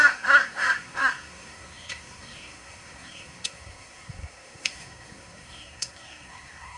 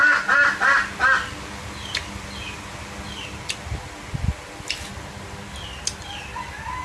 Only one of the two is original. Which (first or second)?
second